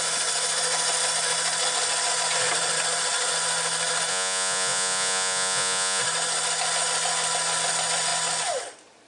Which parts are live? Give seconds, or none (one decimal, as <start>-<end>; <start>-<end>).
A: 0.0-4.1; 6.0-9.1